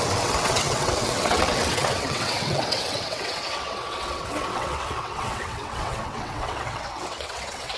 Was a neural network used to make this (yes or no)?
yes